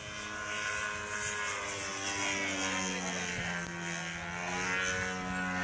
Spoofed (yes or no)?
no